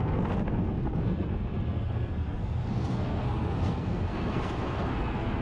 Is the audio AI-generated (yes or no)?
yes